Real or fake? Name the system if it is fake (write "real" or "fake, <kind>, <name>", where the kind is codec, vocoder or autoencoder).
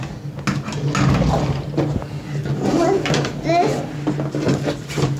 real